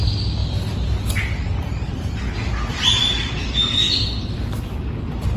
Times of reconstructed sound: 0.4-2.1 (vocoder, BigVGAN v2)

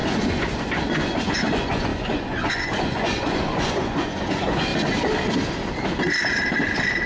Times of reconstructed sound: 0.0-4.7 (vocoder, Vocos)

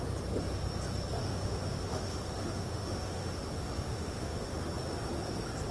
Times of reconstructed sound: 1.2-4.6 (autoencoder, DAC-VAE)

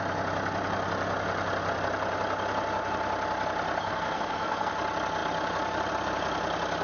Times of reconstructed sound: 3.8-4.7 (codec, SNAC)

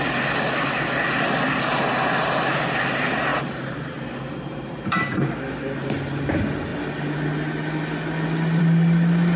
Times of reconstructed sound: 3.3-4.1 (vocoder, BigVGAN v2)